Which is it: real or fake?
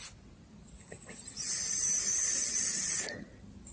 real